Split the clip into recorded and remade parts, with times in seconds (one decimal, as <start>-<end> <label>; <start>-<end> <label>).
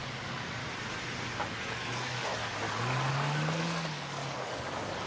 0.0-0.6 remade; 0.6-1.7 recorded; 1.7-2.3 remade; 2.3-3.1 recorded; 3.1-5.1 remade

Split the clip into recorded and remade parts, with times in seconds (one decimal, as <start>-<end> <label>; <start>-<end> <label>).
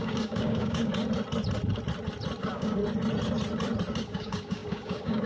0.0-0.9 remade; 0.9-2.4 recorded; 2.4-2.8 remade; 2.8-3.9 recorded; 3.9-5.3 remade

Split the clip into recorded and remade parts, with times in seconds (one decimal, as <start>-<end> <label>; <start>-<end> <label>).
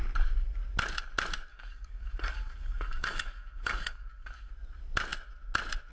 0.0-1.5 recorded; 1.5-4.5 remade; 4.5-5.9 recorded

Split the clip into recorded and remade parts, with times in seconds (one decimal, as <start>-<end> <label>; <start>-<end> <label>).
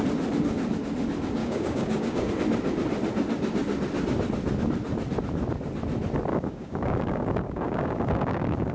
0.0-1.4 recorded; 1.4-2.3 remade; 2.3-6.3 recorded; 6.3-8.7 remade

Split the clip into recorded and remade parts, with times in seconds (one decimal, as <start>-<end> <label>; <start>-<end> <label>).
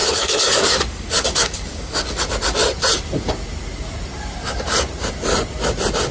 0.0-2.2 remade; 2.2-6.1 recorded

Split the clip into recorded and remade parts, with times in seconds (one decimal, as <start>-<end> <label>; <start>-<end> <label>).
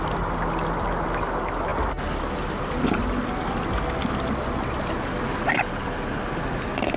0.0-7.0 recorded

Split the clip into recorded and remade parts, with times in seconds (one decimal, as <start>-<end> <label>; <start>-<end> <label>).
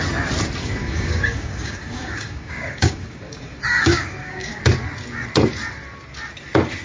0.0-0.6 recorded; 0.6-4.6 remade; 4.6-6.8 recorded